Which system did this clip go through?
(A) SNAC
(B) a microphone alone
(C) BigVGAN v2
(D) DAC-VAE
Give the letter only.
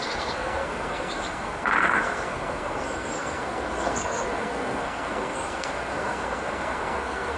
A